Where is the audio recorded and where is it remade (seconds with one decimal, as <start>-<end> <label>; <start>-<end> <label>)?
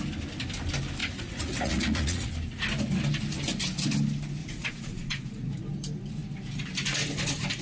0.0-1.0 recorded; 1.0-2.3 remade; 2.3-4.4 recorded; 4.4-5.6 remade; 5.6-7.6 recorded